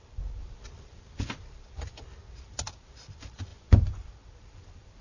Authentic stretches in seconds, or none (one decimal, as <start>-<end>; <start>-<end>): 0.0-3.5; 4.1-5.0